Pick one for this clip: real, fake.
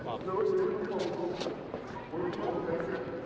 fake